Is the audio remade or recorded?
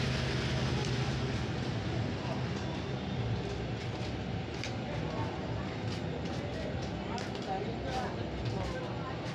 recorded